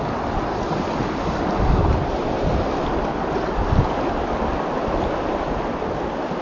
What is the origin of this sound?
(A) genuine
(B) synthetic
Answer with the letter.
A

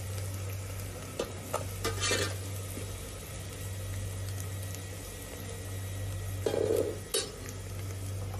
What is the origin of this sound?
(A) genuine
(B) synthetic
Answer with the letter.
A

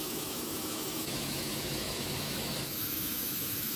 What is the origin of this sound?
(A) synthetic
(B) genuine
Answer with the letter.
A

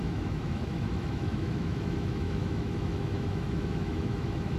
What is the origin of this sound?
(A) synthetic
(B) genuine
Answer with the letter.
A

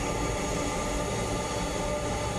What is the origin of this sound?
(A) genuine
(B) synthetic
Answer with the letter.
A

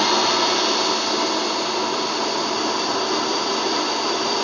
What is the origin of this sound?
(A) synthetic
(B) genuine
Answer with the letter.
B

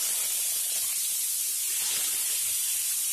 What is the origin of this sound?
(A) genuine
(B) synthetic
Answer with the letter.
A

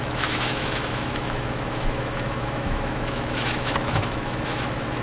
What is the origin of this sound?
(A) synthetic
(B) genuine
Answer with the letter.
A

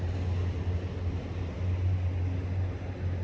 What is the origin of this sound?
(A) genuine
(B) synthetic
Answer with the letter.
A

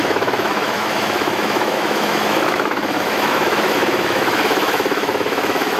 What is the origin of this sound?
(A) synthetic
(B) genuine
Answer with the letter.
A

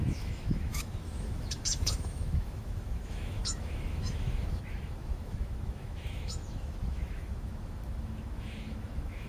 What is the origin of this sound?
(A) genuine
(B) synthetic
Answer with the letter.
B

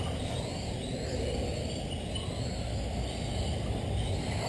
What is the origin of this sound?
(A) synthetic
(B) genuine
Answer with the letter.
B